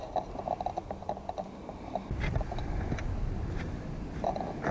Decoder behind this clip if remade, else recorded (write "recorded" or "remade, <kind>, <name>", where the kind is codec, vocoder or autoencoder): remade, vocoder, BigVGAN v2